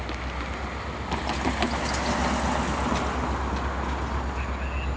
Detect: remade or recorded recorded